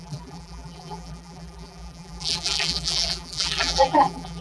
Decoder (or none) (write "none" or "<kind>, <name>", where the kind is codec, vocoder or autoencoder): vocoder, BigVGAN v2